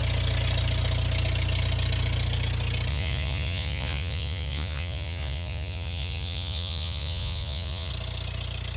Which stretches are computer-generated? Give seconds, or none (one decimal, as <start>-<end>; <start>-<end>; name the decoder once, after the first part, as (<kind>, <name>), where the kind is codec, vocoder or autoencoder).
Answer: 2.9-7.9 (vocoder, Vocos)